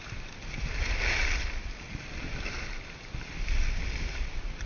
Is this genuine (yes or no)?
yes